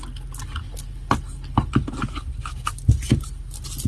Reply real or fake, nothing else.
real